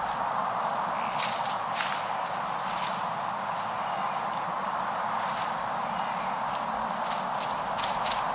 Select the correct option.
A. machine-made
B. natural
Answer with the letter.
B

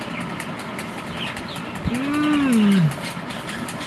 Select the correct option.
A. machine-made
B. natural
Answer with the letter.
B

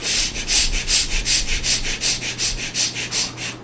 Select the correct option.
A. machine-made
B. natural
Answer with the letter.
B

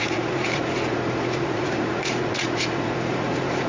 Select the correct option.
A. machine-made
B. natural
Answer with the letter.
A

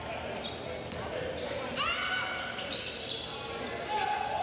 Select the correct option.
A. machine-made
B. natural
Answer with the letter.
B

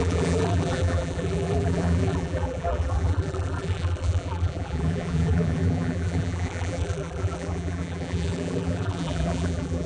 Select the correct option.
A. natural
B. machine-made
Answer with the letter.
B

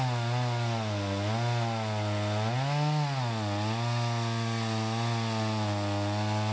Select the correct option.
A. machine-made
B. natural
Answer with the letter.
B